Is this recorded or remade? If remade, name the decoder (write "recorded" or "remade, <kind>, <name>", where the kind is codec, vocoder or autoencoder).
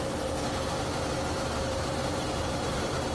recorded